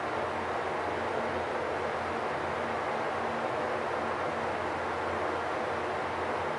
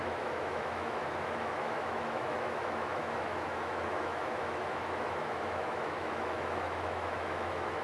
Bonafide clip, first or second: first